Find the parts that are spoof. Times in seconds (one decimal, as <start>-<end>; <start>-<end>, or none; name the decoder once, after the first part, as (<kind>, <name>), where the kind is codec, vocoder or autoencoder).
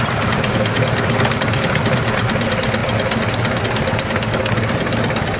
none